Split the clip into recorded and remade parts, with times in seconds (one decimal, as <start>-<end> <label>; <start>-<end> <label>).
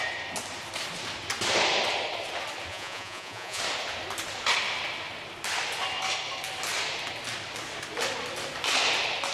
0.0-2.7 recorded; 2.7-3.6 remade; 3.6-9.3 recorded